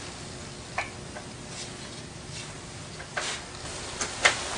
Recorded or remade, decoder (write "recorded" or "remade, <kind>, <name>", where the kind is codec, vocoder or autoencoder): recorded